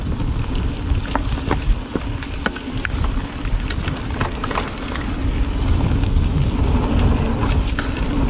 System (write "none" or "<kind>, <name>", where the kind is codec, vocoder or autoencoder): none